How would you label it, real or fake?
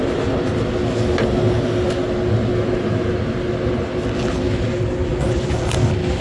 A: real